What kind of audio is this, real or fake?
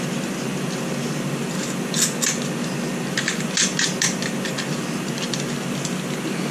real